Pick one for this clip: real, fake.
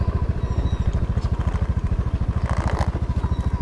real